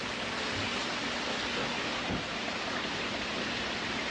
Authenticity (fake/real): real